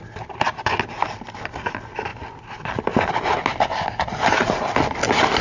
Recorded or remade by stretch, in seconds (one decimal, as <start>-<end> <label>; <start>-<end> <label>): 0.0-2.1 recorded; 2.1-3.1 remade; 3.1-5.4 recorded